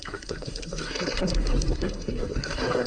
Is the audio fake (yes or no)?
yes